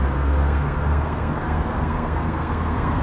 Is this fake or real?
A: fake